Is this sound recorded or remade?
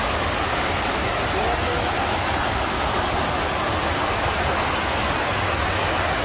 recorded